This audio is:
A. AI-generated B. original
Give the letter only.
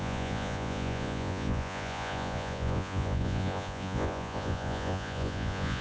A